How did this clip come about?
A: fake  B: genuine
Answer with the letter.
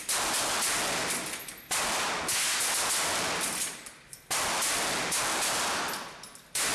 B